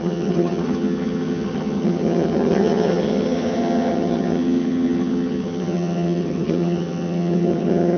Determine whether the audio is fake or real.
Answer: fake